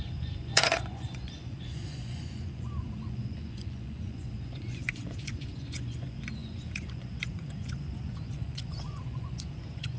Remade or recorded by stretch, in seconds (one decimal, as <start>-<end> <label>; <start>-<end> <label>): 0.0-10.0 remade